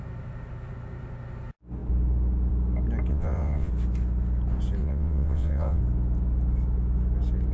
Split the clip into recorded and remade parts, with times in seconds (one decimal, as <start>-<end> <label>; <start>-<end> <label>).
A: 0.0-3.1 recorded; 3.1-3.7 remade; 3.7-4.8 recorded; 4.8-5.8 remade; 5.8-7.5 recorded